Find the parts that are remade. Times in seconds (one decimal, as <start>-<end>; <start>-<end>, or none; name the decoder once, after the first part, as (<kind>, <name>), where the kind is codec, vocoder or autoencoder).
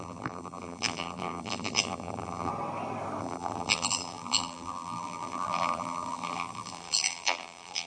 0.0-2.5 (vocoder, BigVGAN v2); 3.2-7.9